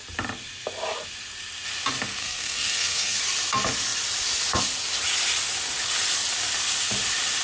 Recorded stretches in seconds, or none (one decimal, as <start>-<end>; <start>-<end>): 0.0-2.2; 3.2-7.4